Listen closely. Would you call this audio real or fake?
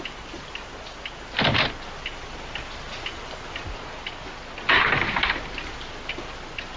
real